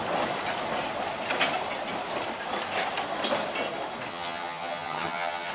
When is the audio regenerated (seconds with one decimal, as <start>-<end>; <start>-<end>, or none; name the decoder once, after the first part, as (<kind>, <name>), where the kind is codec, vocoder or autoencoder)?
4.1-5.5 (vocoder, HiFi-GAN)